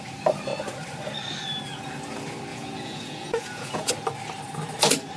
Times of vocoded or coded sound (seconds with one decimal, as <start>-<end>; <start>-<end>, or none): 2.5-3.9